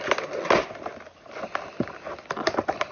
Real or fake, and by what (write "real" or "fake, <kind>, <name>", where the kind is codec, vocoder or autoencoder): real